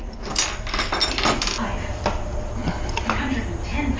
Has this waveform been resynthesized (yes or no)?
no